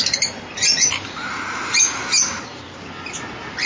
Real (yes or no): yes